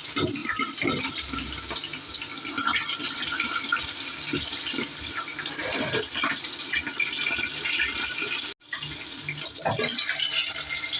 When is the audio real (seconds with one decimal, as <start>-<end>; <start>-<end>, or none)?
0.4-3.8; 8.2-9.7